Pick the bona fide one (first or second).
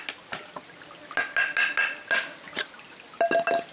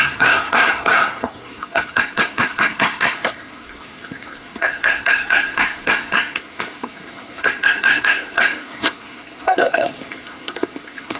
first